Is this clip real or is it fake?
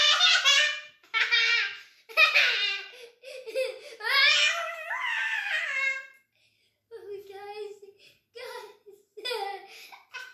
real